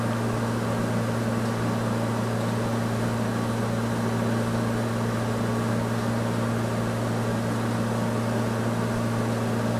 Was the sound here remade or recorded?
recorded